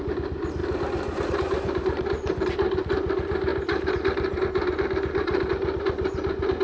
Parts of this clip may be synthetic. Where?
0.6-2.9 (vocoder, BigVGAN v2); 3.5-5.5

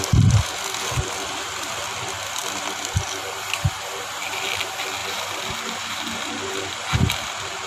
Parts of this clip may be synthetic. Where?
2.4-4.6 (vocoder, BigVGAN v2); 5.0-5.7

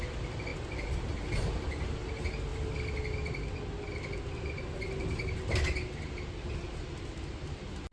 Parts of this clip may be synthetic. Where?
none

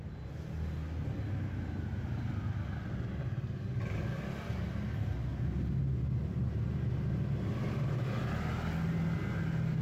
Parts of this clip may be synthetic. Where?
none

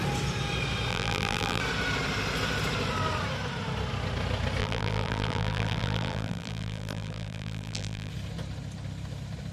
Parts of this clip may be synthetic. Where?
0.9-1.6 (vocoder, BigVGAN v2); 4.6-8.1